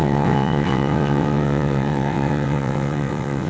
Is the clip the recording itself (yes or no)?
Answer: no